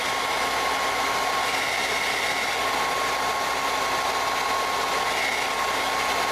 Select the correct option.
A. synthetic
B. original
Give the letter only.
B